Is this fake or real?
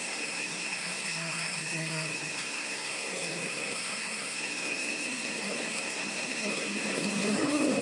fake